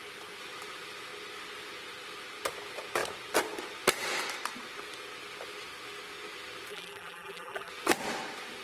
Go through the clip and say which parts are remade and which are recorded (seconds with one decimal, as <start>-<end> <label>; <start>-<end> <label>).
0.0-6.7 recorded; 6.7-7.7 remade; 7.7-8.6 recorded